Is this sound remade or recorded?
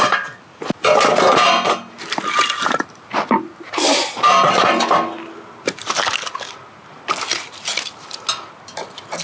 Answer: recorded